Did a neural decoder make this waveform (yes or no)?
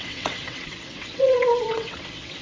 yes